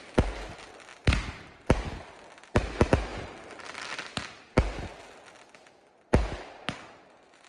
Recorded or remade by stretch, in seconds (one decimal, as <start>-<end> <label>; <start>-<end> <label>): 0.0-7.5 recorded